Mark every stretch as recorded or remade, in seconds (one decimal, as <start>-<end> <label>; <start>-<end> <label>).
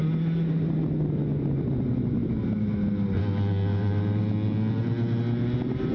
0.0-3.7 recorded; 3.7-4.2 remade; 4.2-5.9 recorded